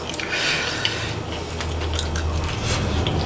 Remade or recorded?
recorded